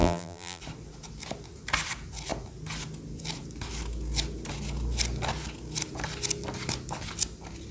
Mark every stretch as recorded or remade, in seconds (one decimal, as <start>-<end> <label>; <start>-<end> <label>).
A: 0.0-0.6 remade; 0.6-7.7 recorded